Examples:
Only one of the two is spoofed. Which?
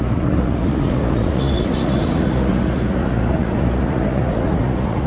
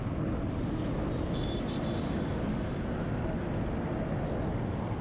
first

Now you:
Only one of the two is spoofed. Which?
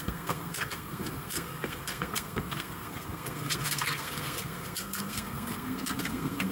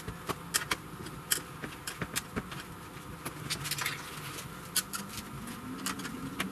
first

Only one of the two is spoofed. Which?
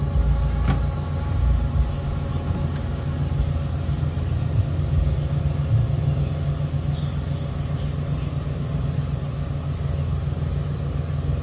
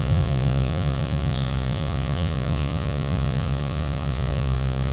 second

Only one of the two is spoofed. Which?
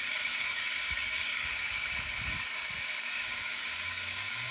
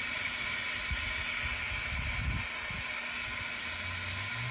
first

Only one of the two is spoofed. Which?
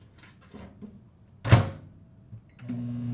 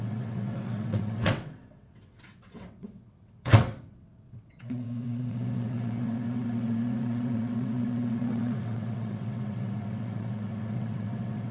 second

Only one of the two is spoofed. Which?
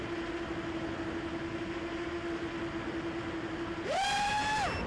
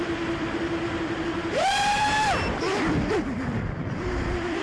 second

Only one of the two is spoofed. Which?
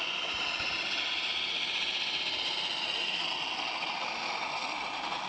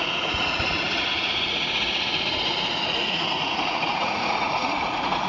second